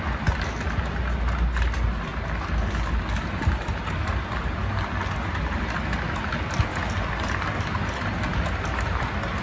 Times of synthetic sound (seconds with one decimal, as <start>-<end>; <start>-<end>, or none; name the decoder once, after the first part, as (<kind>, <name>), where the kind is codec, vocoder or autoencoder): none